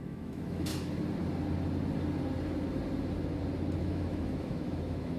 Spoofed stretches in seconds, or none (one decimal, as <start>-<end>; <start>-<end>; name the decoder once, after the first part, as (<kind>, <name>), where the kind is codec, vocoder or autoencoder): 0.0-0.7 (autoencoder, DAC-VAE); 3.8-5.2